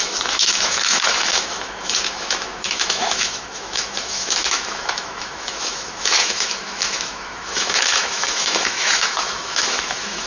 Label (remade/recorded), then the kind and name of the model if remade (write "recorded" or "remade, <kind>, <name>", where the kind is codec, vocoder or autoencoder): remade, autoencoder, DAC-VAE